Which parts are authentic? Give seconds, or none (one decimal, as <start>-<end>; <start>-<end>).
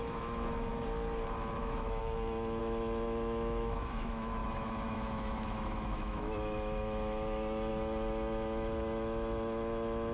0.7-1.6; 2.0-2.6